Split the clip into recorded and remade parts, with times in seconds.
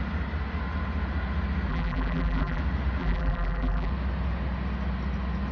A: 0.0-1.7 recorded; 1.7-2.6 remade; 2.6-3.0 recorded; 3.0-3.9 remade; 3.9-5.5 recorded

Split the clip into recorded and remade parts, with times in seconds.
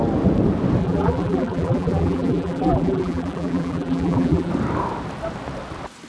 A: 0.0-0.8 recorded; 0.8-4.5 remade; 4.5-6.1 recorded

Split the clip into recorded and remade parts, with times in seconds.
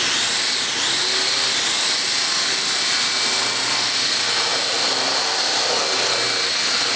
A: 0.0-7.0 recorded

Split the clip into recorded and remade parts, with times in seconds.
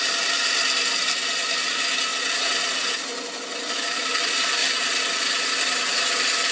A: 0.0-6.5 recorded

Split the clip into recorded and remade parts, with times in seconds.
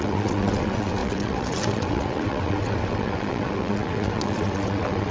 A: 0.0-5.1 remade